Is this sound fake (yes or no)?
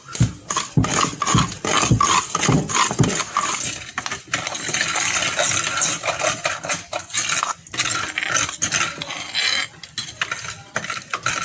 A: no